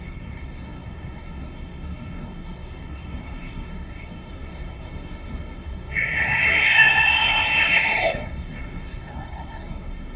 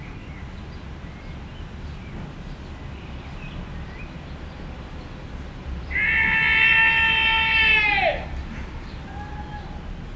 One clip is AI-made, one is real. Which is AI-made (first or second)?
first